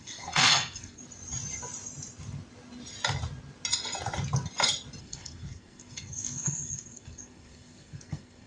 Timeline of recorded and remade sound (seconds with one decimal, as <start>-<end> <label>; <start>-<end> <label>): 0.0-1.0 remade; 1.0-5.0 recorded; 5.0-8.5 remade